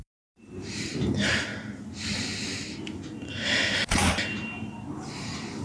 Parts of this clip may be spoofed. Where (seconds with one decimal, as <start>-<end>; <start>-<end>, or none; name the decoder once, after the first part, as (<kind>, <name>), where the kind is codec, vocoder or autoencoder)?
0.0-1.5 (vocoder, BigVGAN v2); 4.9-5.6